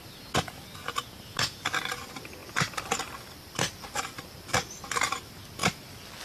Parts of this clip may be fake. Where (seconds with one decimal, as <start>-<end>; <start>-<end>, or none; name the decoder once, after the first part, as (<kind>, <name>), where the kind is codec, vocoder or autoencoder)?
2.4-4.8 (vocoder, BigVGAN v2); 5.6-6.2